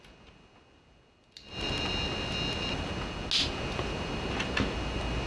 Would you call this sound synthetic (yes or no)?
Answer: no